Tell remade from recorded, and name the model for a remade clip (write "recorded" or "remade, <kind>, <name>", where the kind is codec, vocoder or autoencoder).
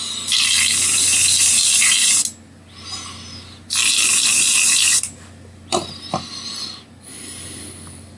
recorded